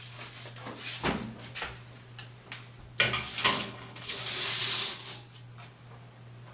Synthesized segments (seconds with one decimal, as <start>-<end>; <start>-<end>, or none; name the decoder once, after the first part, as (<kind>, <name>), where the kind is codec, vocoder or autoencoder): 3.4-4.2 (codec, HILCodec)